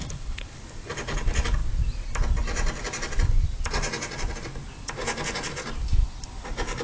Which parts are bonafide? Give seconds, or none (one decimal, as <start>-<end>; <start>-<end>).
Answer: 0.6-6.8